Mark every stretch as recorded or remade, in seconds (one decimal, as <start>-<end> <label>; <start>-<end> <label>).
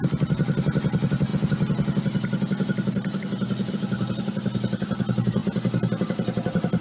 0.0-6.8 recorded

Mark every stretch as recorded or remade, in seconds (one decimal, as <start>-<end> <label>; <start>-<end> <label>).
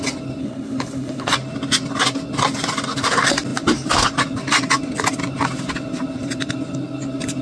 0.0-0.4 recorded; 0.4-1.3 remade; 1.3-7.4 recorded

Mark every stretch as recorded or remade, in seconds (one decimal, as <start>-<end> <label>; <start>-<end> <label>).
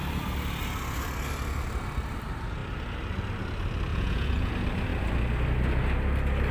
0.0-3.9 recorded; 3.9-4.5 remade; 4.5-6.5 recorded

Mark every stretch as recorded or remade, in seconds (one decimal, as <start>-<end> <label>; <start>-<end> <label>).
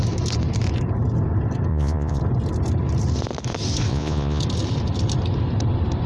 0.0-1.7 recorded; 1.7-2.2 remade; 2.2-3.9 recorded; 3.9-4.4 remade; 4.4-6.1 recorded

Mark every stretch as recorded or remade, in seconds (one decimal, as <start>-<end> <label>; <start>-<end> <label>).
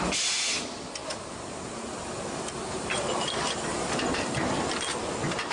0.0-1.0 recorded; 1.0-2.8 remade; 2.8-3.7 recorded; 3.7-4.2 remade; 4.2-5.5 recorded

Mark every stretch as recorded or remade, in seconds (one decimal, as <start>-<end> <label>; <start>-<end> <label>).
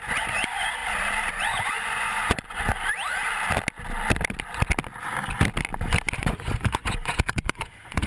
0.0-0.8 remade; 0.8-1.3 recorded; 1.3-2.7 remade; 2.7-6.2 recorded; 6.2-8.1 remade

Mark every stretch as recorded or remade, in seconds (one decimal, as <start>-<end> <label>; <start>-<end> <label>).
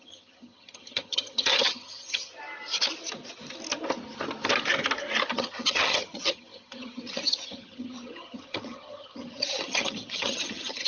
0.0-2.3 remade; 2.3-5.3 recorded; 5.3-10.9 remade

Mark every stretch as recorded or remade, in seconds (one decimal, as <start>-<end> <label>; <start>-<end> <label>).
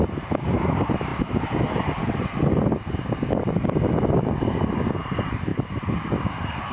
0.0-5.5 recorded; 5.5-6.1 remade; 6.1-6.7 recorded